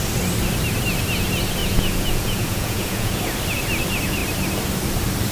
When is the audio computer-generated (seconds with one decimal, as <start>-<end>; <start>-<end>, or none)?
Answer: 1.6-3.2